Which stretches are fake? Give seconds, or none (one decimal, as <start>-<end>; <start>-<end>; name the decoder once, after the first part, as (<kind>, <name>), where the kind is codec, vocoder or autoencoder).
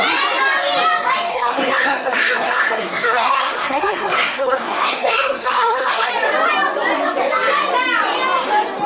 1.3-6.1 (codec, SNAC)